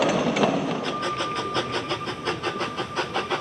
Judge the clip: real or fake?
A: real